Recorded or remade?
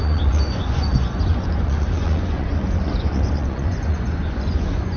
remade